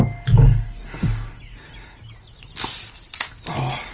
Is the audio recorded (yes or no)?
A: yes